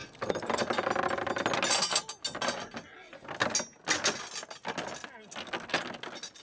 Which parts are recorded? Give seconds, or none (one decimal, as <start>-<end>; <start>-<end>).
0.0-6.4